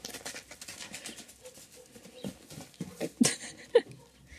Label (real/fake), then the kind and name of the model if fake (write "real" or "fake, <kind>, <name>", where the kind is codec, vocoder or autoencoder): real